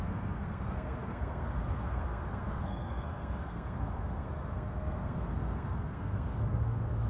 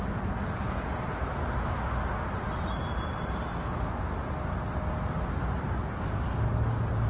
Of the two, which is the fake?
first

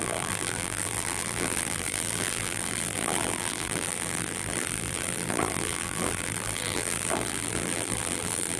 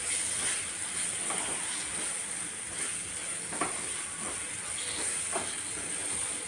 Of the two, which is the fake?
first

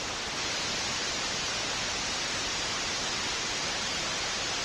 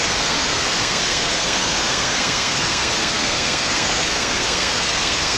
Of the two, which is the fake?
second